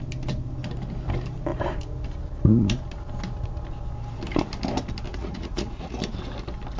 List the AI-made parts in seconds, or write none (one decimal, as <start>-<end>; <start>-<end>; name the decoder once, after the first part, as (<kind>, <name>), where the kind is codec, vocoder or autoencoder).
5.1-6.0 (vocoder, Vocos)